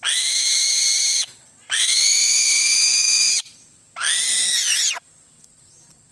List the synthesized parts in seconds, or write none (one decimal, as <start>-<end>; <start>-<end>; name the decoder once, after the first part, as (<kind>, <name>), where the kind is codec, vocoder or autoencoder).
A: 1.8-3.3 (autoencoder, DAC-VAE)